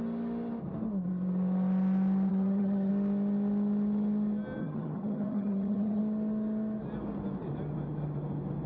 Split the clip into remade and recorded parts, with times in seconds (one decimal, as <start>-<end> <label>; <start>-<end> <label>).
0.0-2.3 recorded; 2.3-2.9 remade; 2.9-4.6 recorded; 4.6-6.0 remade; 6.0-8.7 recorded